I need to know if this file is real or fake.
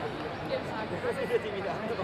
real